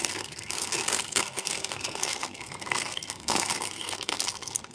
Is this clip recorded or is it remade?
remade